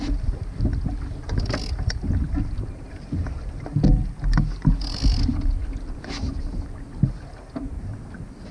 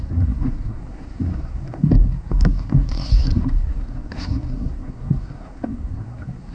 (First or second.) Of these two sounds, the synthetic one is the second